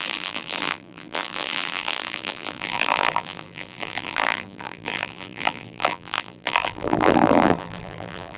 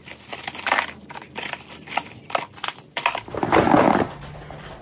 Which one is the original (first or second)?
second